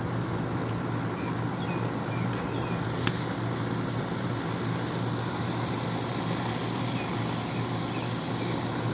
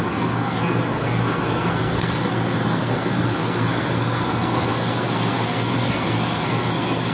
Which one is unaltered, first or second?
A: first